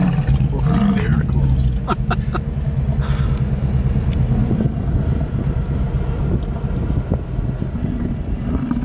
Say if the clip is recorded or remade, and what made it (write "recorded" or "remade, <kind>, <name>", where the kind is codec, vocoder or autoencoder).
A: recorded